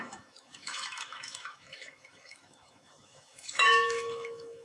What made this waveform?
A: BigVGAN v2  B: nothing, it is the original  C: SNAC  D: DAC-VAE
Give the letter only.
D